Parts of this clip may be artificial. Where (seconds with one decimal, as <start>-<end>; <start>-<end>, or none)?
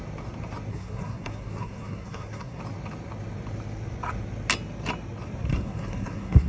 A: 0.7-2.6; 5.5-6.5